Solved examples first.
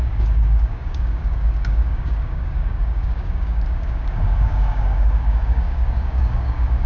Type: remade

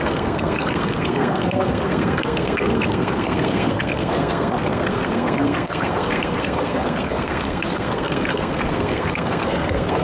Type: remade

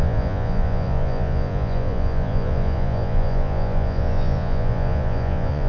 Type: remade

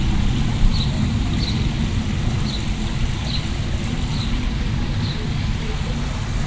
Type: recorded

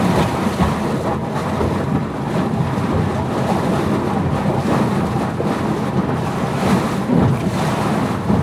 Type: recorded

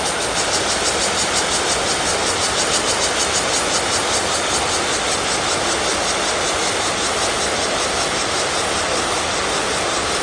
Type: recorded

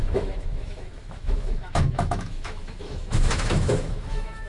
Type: remade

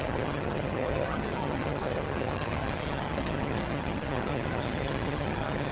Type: remade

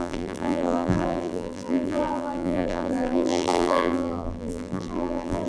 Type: remade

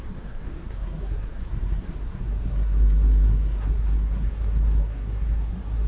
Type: remade